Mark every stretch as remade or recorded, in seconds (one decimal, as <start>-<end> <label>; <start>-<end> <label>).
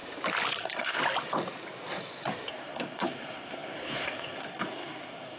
0.0-0.6 recorded; 0.6-1.0 remade; 1.0-2.5 recorded; 2.5-5.4 remade